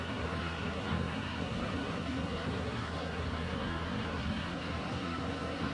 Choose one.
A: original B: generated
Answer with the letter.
B